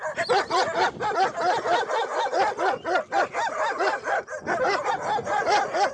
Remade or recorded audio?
recorded